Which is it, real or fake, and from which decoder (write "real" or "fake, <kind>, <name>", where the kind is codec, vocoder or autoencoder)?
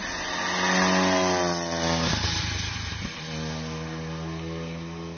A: real